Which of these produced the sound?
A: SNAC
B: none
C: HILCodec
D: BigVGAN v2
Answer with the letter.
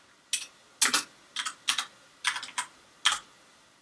B